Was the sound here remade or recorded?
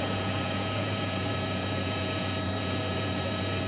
remade